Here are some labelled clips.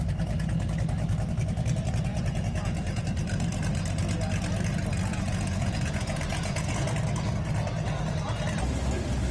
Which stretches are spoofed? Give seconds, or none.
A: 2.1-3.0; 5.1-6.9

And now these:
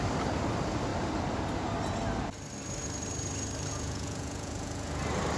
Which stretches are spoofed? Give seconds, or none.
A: 3.7-5.0